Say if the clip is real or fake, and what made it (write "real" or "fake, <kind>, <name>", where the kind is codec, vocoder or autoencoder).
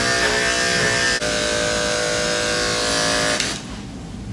real